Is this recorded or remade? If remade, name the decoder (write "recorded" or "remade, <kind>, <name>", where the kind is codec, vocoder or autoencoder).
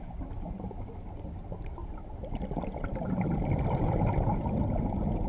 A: recorded